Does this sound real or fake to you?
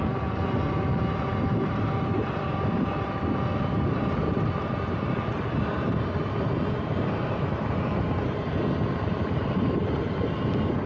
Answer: real